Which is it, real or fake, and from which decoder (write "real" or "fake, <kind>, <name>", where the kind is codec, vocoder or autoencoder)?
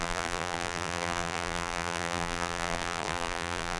fake, vocoder, BigVGAN v2